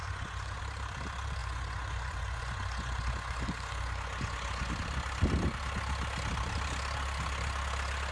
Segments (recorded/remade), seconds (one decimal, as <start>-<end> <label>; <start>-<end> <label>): 0.0-0.6 remade; 0.6-1.4 recorded; 1.4-4.7 remade; 4.7-8.1 recorded

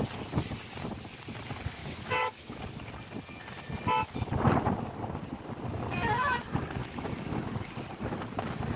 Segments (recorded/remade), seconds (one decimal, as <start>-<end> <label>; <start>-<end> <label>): 0.0-1.8 recorded; 1.8-2.6 remade; 2.6-6.8 recorded; 6.8-7.5 remade; 7.5-8.8 recorded

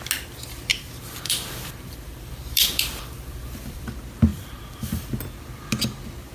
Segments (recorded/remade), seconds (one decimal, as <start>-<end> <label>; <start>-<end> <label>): 0.0-0.7 recorded; 0.7-3.9 remade; 3.9-4.3 recorded; 4.3-5.0 remade; 5.0-6.3 recorded

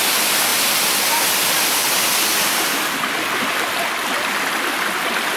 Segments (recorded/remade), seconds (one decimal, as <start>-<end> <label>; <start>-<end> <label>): 0.0-5.4 recorded

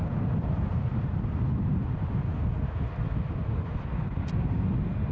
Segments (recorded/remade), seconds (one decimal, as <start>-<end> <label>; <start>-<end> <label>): 0.0-5.1 recorded

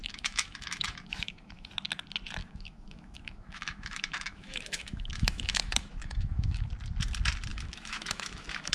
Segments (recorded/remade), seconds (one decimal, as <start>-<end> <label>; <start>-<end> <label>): 0.0-1.7 remade; 1.7-2.4 recorded; 2.4-6.7 remade; 6.7-7.5 recorded; 7.5-8.7 remade

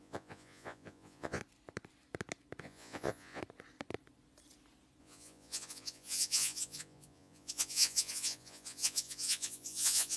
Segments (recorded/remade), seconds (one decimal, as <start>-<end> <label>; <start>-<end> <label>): 0.0-1.4 remade; 1.4-2.6 recorded; 2.6-3.4 remade; 3.4-5.0 recorded; 5.0-10.2 remade

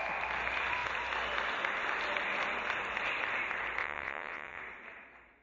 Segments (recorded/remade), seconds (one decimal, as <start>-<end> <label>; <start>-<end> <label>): 0.0-3.8 recorded; 3.8-4.6 remade; 4.6-5.4 recorded